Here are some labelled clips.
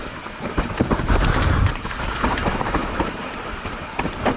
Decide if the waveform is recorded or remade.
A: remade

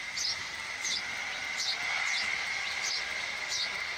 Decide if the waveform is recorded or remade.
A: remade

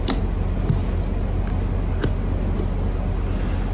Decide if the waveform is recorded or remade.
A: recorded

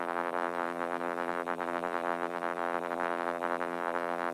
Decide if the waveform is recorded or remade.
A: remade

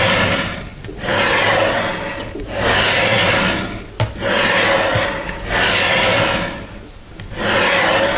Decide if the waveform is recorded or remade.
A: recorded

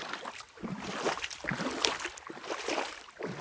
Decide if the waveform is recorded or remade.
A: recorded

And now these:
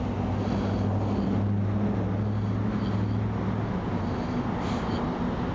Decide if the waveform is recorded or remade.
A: recorded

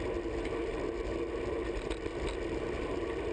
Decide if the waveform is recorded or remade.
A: recorded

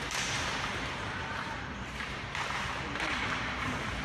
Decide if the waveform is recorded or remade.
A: remade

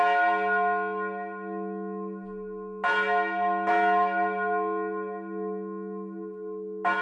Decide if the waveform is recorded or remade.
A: recorded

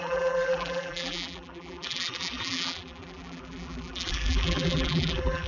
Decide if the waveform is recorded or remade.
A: remade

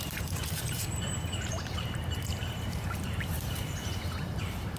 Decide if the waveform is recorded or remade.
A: remade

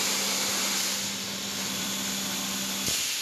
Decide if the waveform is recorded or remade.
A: remade